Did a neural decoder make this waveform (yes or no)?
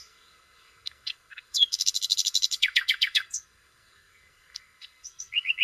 yes